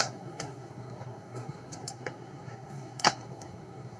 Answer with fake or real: fake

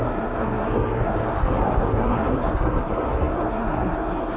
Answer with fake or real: fake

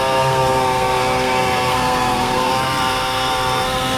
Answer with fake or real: fake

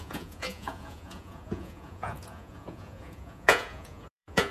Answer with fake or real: fake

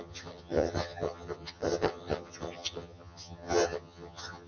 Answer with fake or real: fake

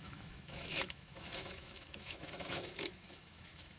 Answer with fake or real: fake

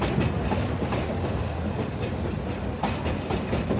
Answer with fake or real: real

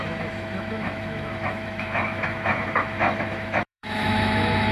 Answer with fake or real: fake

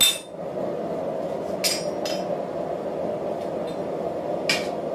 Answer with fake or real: real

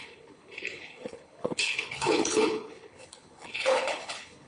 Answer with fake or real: fake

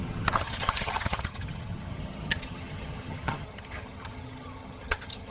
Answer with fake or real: fake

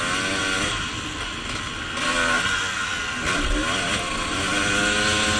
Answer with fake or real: real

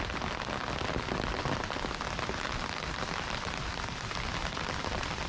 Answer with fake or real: real